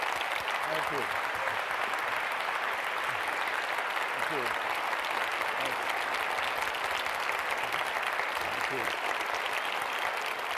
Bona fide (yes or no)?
yes